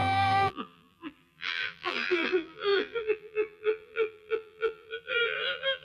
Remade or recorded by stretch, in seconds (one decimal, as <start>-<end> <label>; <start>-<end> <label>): 0.0-5.8 remade